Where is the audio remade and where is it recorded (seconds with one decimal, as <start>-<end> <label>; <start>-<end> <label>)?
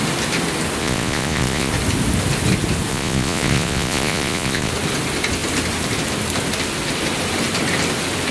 0.0-0.8 recorded; 0.8-1.7 remade; 1.7-2.9 recorded; 2.9-4.7 remade; 4.7-8.3 recorded